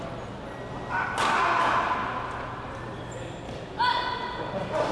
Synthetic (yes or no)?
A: no